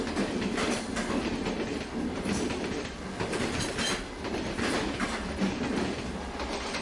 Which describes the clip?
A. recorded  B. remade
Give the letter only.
A